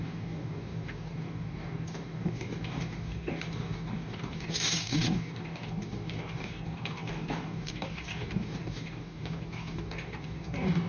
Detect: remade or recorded remade